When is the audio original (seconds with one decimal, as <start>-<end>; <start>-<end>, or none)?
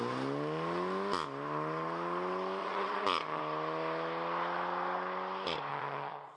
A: 0.0-2.6; 3.4-5.7